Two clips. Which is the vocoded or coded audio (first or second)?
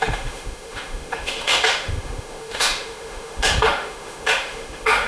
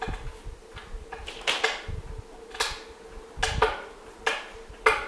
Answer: first